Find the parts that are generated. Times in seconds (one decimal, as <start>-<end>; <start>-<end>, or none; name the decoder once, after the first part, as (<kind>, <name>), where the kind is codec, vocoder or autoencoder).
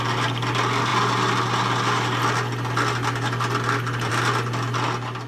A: none